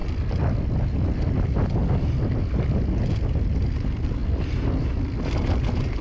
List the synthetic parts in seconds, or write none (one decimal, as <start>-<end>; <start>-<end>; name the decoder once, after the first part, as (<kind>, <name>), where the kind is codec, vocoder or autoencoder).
none

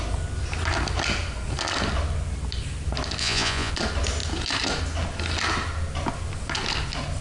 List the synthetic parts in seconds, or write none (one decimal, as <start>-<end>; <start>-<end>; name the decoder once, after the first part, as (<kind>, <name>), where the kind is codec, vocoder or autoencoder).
3.2-3.7 (vocoder, Vocos)